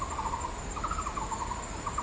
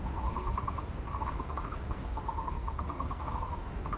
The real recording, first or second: first